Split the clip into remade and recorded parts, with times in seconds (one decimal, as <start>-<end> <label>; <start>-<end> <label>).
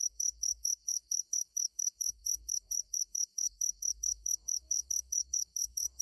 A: 0.0-6.0 remade